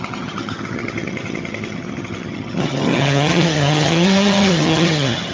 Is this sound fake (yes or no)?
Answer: yes